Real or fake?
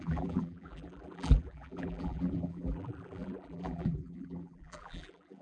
fake